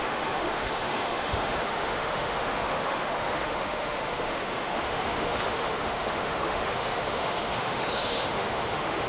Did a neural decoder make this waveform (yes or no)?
yes